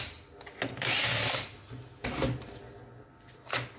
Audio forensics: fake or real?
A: real